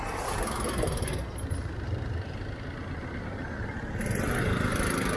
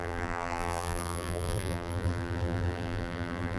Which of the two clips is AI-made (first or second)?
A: second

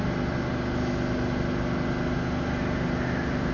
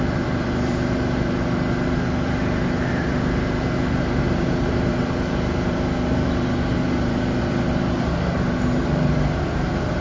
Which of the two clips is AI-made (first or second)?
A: second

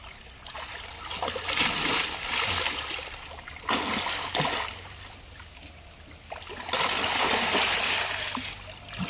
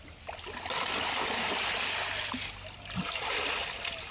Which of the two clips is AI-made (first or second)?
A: second